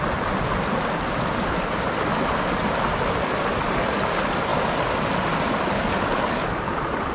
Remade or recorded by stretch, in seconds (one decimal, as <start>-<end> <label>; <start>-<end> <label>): 0.0-7.1 recorded